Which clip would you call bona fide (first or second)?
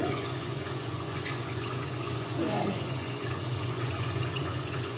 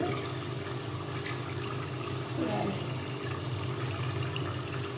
second